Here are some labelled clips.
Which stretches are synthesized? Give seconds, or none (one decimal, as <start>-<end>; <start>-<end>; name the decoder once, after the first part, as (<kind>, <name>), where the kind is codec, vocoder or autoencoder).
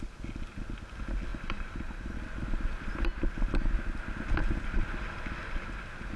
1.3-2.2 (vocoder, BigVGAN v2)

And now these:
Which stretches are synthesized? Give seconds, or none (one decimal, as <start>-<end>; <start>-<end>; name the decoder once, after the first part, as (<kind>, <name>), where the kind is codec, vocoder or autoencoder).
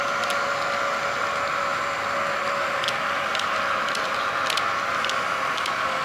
none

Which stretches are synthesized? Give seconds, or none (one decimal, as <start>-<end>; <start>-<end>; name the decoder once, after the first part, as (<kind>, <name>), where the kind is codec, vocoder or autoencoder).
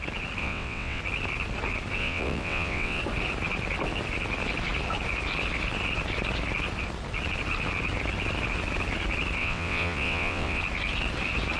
0.4-1.0 (vocoder, WaveNeXt); 2.0-3.0; 9.4-10.6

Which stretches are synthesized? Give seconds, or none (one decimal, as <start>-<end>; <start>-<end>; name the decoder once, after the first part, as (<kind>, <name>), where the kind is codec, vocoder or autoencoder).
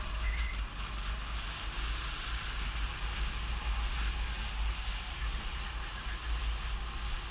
none